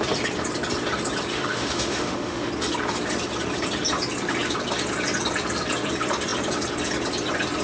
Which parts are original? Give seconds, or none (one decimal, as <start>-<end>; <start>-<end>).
0.0-1.3; 2.5-7.6